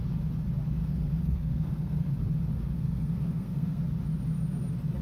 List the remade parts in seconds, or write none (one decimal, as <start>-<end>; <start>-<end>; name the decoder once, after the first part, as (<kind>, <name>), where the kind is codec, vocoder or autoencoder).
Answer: 0.8-2.1 (codec, SNAC); 2.5-3.8